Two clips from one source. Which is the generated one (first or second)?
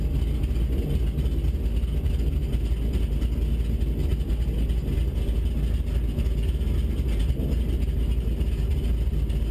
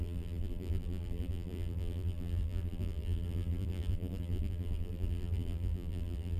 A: second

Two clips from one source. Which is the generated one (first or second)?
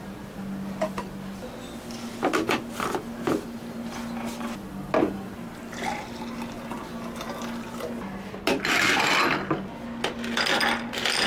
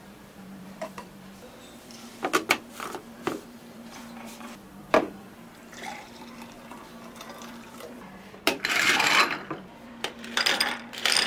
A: second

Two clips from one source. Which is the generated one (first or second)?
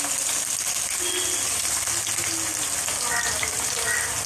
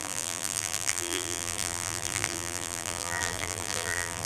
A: second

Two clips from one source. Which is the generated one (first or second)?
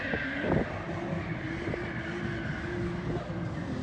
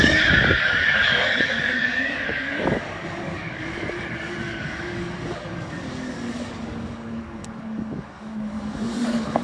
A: second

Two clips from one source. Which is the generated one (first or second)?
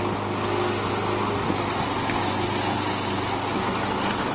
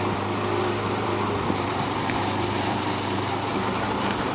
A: second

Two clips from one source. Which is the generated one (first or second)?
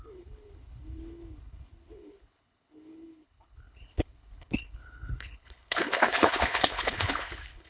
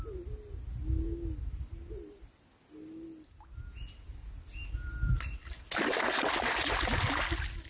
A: first